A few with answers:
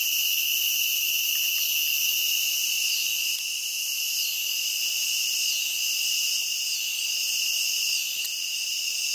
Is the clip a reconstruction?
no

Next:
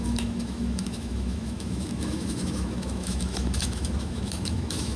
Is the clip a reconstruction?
yes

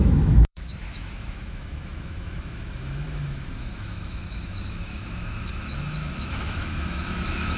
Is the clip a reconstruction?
yes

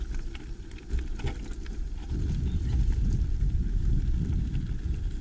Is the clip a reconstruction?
no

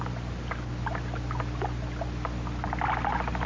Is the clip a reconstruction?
no